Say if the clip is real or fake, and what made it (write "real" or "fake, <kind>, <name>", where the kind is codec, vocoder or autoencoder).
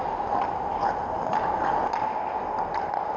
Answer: real